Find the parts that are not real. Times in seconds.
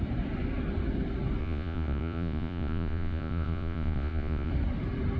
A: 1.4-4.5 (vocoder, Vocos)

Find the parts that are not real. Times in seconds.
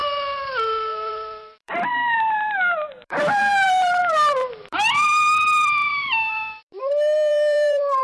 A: 1.1-8.0 (vocoder, BigVGAN v2)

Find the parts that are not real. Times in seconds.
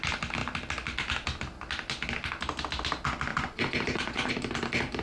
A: 3.3-4.3 (vocoder, Vocos)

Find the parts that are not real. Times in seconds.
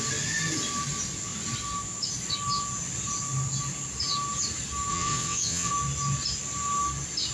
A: 4.9-5.7 (vocoder, WaveNeXt)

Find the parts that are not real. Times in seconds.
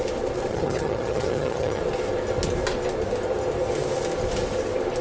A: 0.5-1.8 (vocoder, HiFi-GAN)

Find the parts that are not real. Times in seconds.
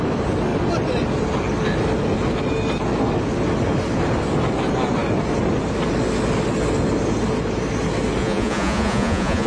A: 8.2-9.5 (vocoder, Vocos)